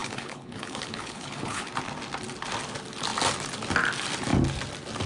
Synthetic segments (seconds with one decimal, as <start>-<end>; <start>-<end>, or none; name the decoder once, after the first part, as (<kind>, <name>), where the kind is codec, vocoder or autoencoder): 0.0-1.7 (codec, HILCodec)